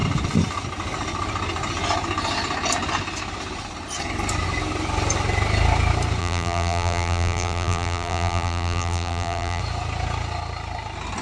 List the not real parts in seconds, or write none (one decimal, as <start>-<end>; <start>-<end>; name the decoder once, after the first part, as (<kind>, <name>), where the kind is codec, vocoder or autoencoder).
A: 6.2-9.6 (vocoder, BigVGAN v2)